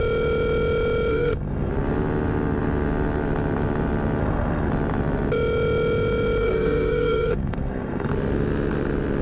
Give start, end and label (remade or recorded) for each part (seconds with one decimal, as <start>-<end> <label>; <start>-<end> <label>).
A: 0.0-1.1 recorded; 1.1-1.7 remade; 1.7-4.2 recorded; 4.2-4.7 remade; 4.7-6.4 recorded; 6.4-8.1 remade; 8.1-9.2 recorded